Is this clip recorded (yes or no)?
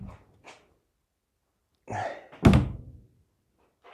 yes